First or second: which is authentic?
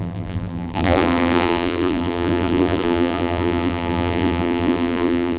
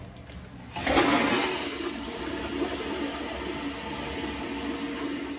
second